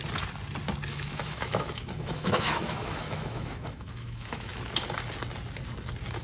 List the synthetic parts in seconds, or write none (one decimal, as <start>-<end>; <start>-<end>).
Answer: 0.9-4.6